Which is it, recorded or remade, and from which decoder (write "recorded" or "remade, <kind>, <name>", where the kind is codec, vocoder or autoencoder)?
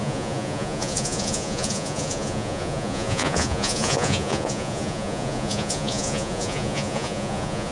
remade, vocoder, Vocos